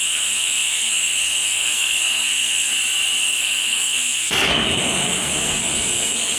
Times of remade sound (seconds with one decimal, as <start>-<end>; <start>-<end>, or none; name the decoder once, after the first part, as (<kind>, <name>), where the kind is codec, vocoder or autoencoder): 0.0-2.7 (codec, SNAC); 3.2-6.4